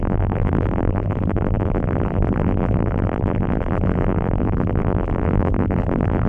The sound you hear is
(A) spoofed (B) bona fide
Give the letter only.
A